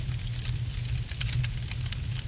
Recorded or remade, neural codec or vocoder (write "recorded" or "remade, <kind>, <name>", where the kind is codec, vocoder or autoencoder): recorded